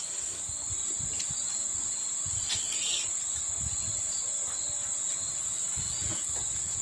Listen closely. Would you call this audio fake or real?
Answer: real